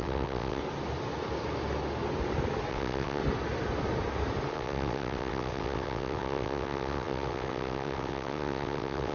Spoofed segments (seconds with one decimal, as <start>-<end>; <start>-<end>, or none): 0.0-0.6; 2.7-3.2; 4.5-9.1